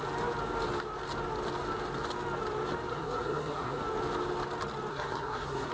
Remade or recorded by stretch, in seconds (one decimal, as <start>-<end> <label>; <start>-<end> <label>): 0.0-2.9 recorded; 2.9-3.8 remade; 3.8-4.9 recorded; 4.9-5.7 remade